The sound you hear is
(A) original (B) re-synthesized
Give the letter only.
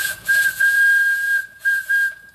B